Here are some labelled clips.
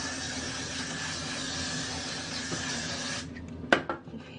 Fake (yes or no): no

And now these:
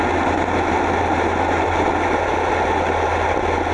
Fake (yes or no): no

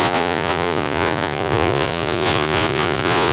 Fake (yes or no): yes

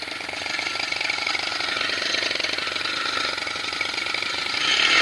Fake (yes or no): yes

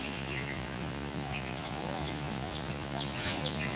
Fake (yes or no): yes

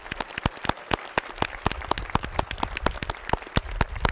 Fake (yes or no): no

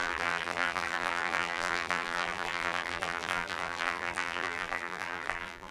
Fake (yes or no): yes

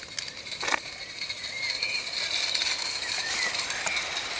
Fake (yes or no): no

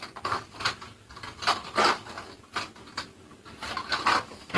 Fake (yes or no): no